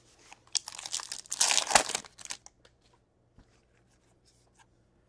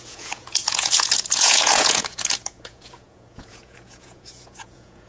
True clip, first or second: first